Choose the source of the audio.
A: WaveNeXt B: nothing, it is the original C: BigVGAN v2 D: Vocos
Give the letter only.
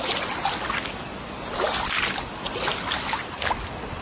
B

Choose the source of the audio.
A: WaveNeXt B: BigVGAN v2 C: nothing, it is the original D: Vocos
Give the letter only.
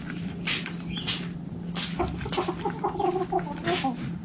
C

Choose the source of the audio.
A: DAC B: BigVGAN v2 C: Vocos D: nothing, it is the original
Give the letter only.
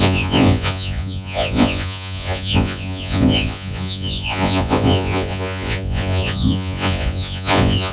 C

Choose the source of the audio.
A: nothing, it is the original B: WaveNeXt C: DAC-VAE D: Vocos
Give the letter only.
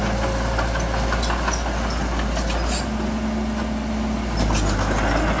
A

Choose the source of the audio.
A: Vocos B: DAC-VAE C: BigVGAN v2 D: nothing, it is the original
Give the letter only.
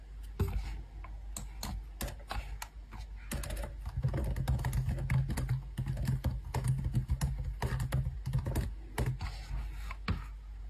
D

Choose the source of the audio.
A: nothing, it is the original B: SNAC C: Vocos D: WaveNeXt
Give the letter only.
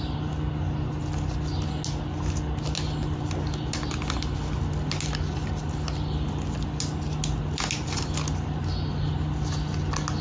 A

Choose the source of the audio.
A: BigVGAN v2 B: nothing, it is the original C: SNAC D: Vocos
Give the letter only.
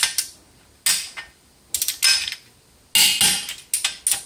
B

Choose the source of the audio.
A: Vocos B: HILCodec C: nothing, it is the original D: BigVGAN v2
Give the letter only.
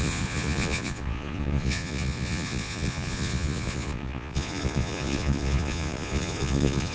A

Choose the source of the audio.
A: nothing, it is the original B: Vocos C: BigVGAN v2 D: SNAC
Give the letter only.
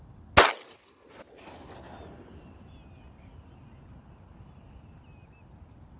A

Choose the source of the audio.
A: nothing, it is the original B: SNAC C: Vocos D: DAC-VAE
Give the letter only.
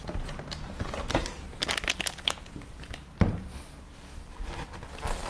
A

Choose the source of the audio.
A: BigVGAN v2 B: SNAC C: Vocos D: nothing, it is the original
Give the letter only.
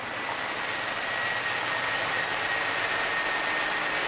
D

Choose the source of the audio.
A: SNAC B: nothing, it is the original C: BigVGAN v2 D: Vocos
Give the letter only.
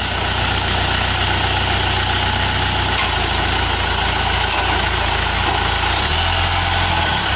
B